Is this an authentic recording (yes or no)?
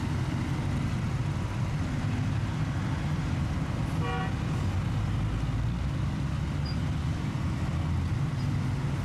yes